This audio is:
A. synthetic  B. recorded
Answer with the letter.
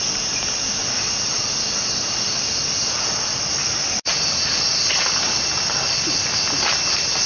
B